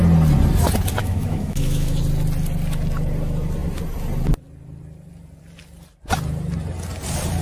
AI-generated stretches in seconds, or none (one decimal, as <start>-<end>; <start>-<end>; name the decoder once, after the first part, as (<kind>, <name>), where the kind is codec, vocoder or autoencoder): 1.0-2.0 (autoencoder, DAC-VAE)